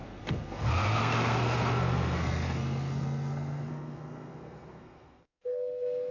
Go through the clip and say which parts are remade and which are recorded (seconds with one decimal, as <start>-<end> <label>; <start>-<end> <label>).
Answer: 0.0-6.1 remade